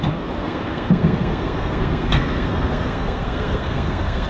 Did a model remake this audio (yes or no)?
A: yes